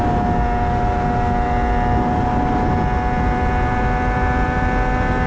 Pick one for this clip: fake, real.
real